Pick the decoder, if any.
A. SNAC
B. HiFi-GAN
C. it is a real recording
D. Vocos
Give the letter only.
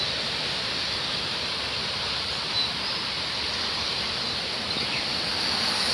C